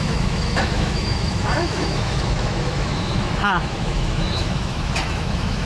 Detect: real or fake fake